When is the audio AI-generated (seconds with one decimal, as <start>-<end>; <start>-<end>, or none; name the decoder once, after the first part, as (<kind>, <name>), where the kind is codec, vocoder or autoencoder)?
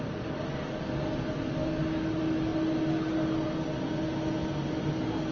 none